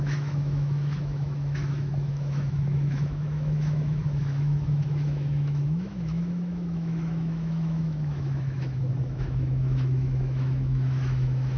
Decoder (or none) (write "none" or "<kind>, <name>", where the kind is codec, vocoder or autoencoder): autoencoder, DAC-VAE